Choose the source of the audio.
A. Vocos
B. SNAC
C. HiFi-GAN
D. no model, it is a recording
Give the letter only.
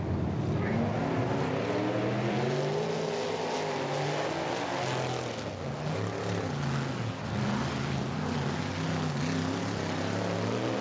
D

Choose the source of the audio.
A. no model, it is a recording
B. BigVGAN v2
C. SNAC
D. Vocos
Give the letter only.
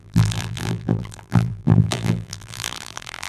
B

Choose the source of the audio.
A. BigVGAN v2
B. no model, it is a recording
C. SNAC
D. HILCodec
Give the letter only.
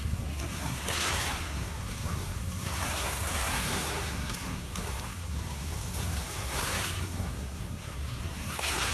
C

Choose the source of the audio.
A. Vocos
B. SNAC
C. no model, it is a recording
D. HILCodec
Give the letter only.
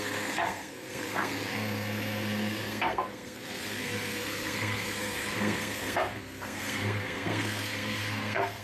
B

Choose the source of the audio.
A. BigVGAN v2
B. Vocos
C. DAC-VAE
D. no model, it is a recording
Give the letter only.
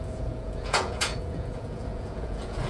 B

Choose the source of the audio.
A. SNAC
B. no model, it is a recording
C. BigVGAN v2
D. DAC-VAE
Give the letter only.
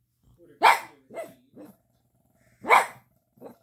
B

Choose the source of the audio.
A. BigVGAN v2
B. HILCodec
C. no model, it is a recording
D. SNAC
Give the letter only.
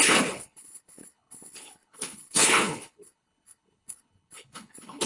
B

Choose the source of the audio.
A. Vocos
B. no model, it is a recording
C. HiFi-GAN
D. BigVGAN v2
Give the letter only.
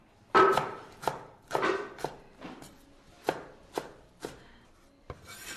D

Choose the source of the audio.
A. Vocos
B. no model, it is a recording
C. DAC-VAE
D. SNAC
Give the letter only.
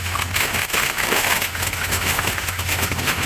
C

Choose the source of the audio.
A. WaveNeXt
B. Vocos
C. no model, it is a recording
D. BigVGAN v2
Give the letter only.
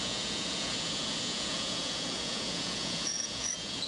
B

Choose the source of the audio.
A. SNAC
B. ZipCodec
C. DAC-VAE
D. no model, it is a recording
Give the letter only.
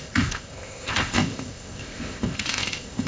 B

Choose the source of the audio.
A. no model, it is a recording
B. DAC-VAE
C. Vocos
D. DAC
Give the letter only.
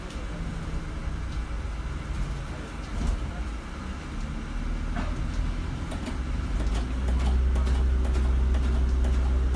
A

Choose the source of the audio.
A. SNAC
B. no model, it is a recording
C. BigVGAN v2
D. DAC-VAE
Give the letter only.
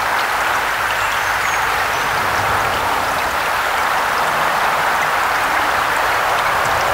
B